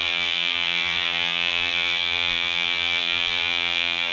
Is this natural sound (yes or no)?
no